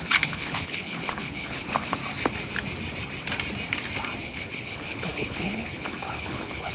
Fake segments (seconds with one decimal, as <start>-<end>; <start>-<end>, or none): 0.0-2.0; 4.2-6.7